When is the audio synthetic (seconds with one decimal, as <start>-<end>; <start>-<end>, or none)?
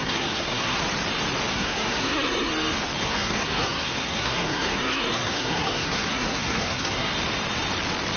0.0-0.8; 1.5-2.5; 3.0-7.1